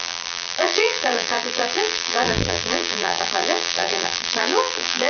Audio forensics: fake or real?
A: fake